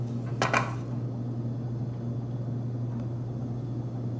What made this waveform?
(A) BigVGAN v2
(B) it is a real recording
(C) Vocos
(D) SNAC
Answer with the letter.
B